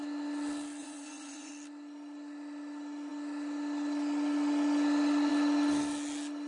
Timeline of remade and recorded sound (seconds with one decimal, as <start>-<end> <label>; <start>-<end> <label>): 0.0-0.8 recorded; 0.8-1.5 remade; 1.5-6.5 recorded